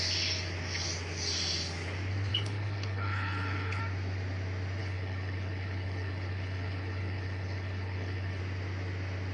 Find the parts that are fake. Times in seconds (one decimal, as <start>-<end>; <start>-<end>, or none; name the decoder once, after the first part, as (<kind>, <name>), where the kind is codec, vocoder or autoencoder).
2.3-3.8 (codec, HILCodec); 4.8-8.4

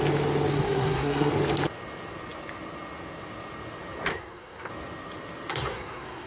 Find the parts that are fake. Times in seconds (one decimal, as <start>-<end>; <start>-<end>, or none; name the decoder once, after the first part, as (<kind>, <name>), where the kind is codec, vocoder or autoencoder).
0.5-1.3 (codec, SNAC); 4.1-4.7; 5.5-6.3

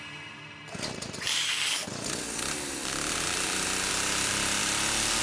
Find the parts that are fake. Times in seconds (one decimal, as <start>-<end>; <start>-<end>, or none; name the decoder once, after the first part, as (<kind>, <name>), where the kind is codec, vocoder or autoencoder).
none